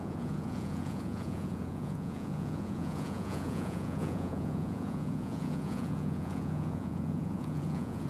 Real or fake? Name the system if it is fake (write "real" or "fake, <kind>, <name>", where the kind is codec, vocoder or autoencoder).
fake, vocoder, Vocos